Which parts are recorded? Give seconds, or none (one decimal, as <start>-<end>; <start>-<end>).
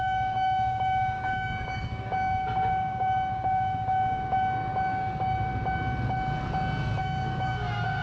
5.5-7.0